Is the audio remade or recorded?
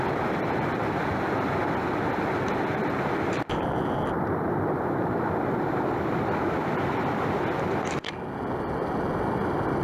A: recorded